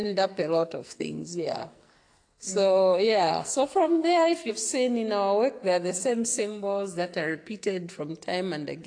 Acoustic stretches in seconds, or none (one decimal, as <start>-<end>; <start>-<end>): 4.5-5.6; 8.0-8.9